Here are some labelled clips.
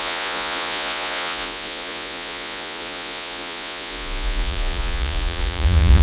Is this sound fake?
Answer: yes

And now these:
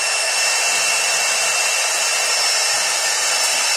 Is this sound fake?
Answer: no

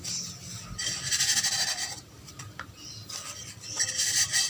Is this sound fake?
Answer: no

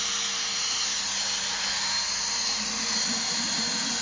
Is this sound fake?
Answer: no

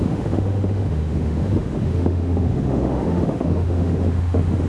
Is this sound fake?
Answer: yes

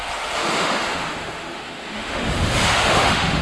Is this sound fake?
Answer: yes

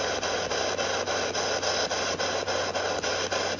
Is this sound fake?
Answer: no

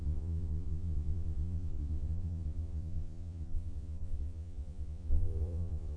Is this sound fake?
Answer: yes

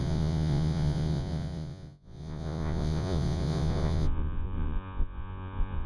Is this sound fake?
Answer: yes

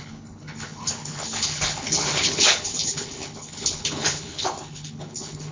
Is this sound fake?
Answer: yes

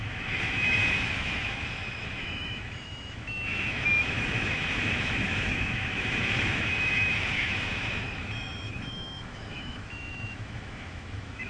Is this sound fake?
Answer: yes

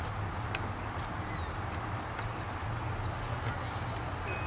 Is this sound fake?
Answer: no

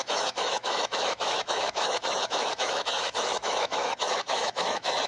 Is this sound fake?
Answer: yes